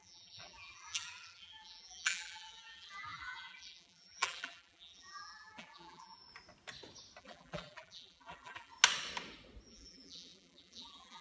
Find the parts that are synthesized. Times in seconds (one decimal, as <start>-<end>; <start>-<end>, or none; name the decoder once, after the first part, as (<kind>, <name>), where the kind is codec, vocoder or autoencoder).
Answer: 0.0-6.2 (vocoder, BigVGAN v2); 7.2-8.7; 9.7-11.2

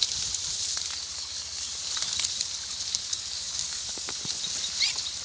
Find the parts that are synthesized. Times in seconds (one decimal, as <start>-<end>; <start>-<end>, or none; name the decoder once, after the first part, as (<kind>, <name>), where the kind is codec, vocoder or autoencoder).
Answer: 1.1-1.7 (codec, DAC); 3.0-4.4

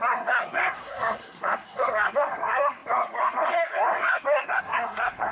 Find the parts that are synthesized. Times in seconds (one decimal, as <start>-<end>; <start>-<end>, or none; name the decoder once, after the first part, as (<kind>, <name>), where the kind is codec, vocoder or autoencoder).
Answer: 0.0-5.3 (codec, SNAC)

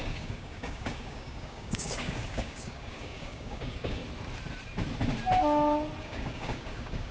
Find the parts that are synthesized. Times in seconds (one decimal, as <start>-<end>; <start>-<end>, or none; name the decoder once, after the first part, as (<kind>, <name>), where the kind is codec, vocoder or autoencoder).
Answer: 0.0-4.0 (codec, DAC); 6.0-7.1

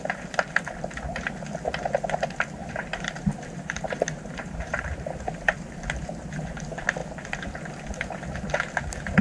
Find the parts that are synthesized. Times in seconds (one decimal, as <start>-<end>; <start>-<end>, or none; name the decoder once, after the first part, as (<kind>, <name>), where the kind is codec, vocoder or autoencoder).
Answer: 2.6-6.5 (vocoder, BigVGAN v2)

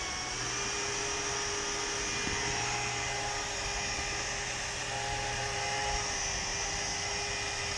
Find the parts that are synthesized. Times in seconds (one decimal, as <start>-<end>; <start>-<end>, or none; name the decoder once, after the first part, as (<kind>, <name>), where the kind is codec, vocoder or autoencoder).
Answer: none